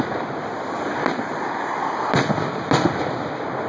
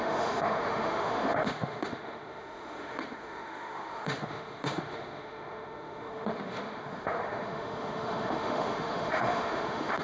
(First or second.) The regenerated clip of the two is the second